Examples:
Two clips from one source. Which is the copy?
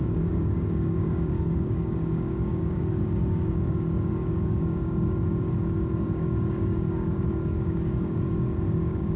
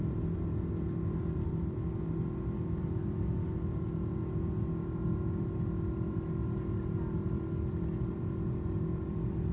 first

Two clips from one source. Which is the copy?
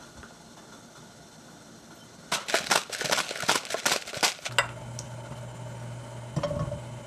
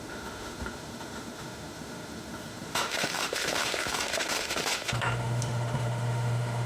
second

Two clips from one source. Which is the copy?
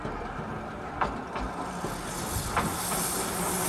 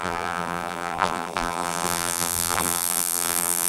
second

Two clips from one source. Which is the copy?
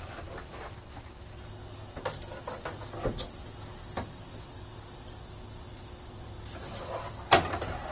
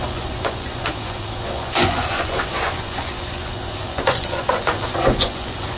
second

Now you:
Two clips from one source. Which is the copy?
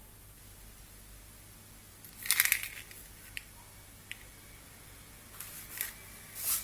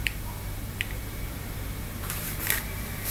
second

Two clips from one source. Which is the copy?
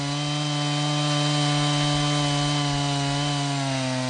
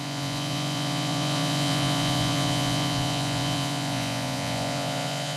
second